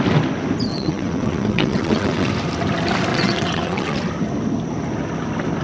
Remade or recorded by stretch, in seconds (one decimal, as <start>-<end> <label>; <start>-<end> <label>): 0.0-0.7 recorded; 0.7-2.3 remade; 2.3-3.1 recorded; 3.1-4.0 remade; 4.0-5.6 recorded